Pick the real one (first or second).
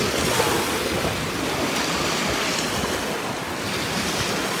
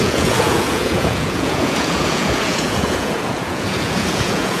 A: first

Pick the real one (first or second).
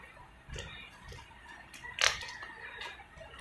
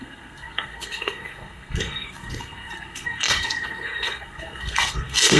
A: first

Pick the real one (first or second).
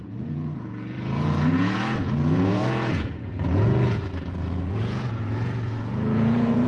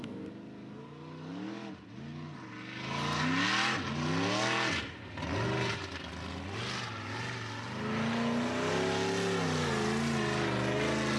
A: second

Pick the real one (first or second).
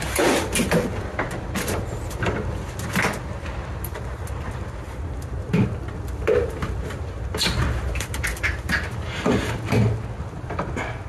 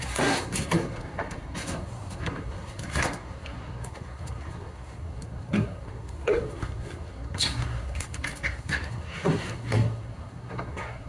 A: first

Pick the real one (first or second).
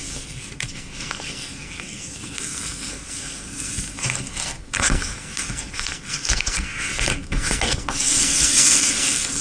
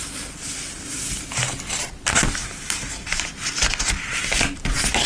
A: second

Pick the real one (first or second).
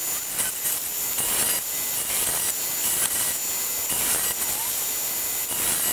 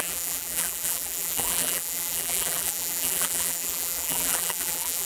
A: first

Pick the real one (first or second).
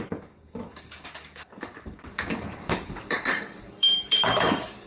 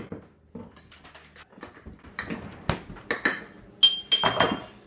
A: second